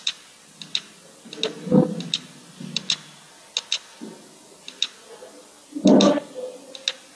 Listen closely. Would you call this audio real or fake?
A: real